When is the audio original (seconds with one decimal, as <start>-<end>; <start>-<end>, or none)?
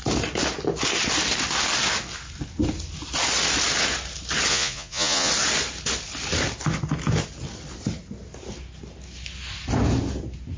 0.0-4.5; 5.3-10.6